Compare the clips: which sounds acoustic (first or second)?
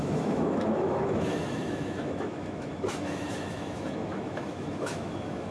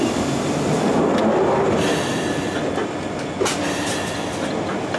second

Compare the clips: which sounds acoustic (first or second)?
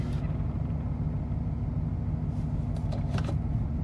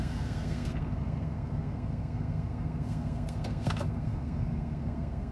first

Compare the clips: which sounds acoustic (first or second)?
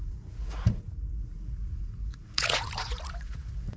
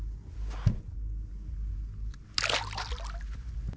second